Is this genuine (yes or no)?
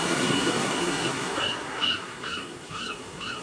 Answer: no